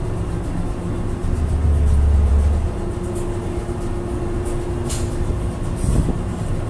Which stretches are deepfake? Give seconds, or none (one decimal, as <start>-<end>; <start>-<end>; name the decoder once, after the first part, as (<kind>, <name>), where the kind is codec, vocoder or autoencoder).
none